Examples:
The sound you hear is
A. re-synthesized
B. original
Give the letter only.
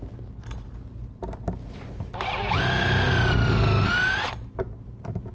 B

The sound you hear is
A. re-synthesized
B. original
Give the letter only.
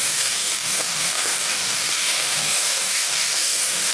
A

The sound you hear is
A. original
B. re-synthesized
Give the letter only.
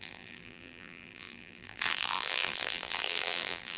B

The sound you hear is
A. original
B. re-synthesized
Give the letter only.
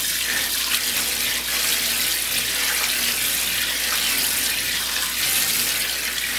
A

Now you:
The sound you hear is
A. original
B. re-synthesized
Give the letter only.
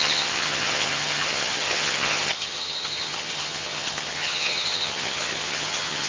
B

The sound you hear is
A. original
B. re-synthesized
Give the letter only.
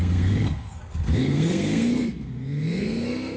B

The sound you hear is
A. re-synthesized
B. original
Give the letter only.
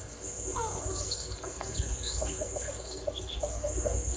A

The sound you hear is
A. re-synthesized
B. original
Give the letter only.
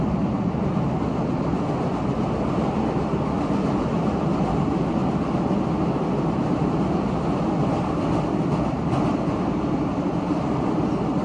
B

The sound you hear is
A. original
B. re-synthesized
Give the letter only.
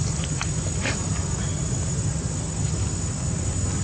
A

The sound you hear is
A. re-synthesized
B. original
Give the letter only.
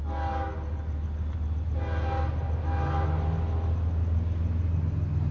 B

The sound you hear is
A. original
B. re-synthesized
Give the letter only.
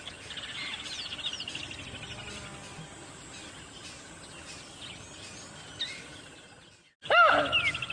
A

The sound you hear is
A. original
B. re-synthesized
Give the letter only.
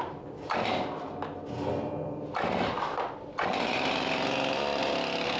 A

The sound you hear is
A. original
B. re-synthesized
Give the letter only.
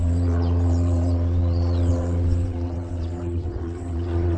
B